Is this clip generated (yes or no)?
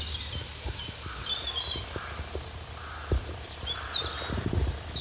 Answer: no